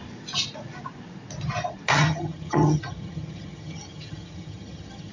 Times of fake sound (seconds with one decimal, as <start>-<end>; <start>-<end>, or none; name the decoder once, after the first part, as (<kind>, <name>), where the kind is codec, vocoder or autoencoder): 1.9-5.1 (vocoder, HiFi-GAN)